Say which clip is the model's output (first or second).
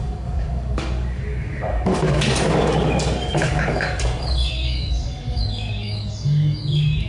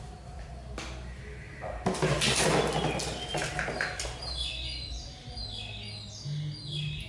first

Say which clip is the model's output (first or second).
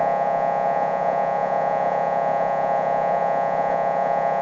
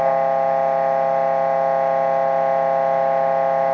first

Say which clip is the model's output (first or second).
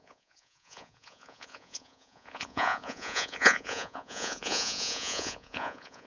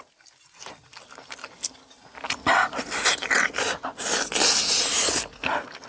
first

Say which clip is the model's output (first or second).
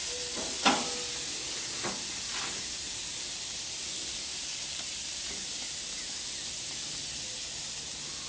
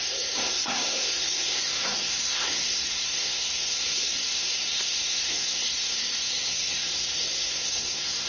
second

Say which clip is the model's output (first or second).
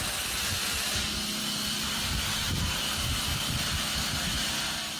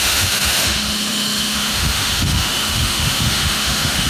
second